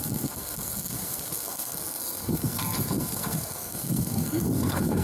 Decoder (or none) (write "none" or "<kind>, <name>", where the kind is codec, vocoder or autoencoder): codec, SNAC